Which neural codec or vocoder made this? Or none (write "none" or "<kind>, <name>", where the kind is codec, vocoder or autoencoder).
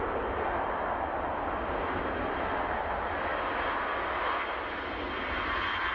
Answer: none